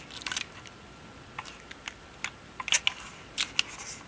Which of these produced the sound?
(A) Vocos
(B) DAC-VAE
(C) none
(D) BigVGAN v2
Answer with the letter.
C